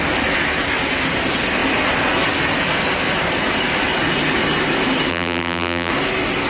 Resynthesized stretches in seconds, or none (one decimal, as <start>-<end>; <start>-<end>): 5.1-5.9